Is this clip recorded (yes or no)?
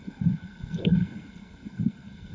no